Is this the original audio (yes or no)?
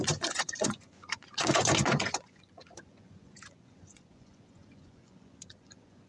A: no